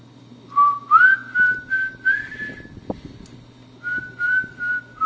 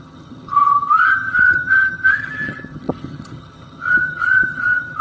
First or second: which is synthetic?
second